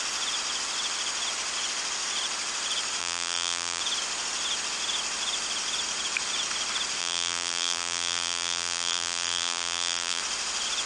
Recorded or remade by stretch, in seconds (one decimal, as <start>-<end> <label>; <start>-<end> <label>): 0.0-3.0 recorded; 3.0-3.8 remade; 3.8-7.0 recorded; 7.0-10.2 remade; 10.2-10.9 recorded